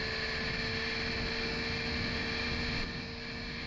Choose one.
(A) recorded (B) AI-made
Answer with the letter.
A